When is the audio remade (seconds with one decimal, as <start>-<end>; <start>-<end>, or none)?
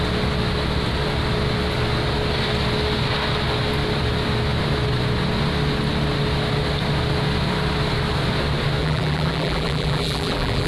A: 8.8-10.7